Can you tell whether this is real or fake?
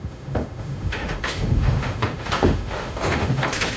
fake